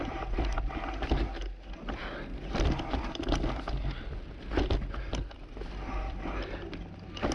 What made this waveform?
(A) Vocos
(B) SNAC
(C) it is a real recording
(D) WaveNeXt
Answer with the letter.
C